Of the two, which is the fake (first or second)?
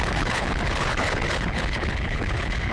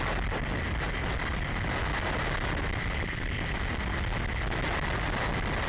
first